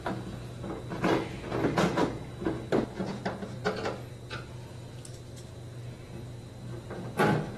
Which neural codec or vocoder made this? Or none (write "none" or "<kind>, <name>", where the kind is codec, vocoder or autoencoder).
none